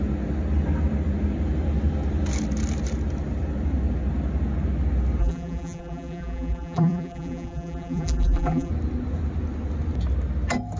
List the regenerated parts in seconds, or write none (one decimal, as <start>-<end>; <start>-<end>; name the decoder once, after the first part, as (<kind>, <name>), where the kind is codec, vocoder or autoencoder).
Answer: 5.2-8.7 (vocoder, BigVGAN v2)